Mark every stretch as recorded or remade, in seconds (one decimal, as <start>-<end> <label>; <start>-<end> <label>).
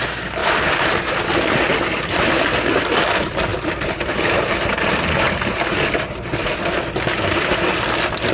0.0-0.4 recorded; 0.4-1.2 remade; 1.2-1.9 recorded; 1.9-2.8 remade; 2.8-3.5 recorded; 3.5-7.6 remade; 7.6-8.3 recorded